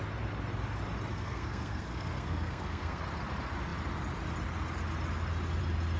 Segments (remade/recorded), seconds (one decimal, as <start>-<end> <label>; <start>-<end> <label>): 0.0-1.1 recorded; 1.1-3.0 remade; 3.0-6.0 recorded